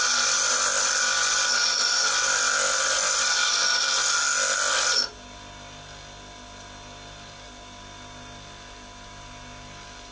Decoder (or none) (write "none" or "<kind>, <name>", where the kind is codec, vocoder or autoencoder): none